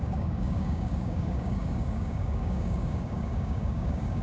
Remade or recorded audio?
remade